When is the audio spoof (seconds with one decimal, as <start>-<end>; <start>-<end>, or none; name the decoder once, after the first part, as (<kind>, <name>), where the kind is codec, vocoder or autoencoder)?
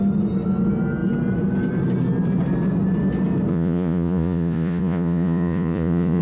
3.5-6.2 (vocoder, Vocos)